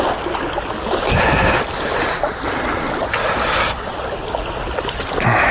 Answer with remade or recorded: recorded